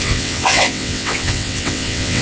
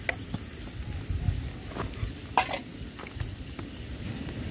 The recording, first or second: second